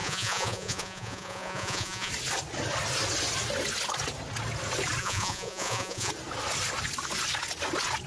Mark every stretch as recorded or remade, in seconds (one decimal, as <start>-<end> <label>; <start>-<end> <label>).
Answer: 0.0-2.1 remade; 2.1-5.0 recorded; 5.0-6.1 remade; 6.1-8.1 recorded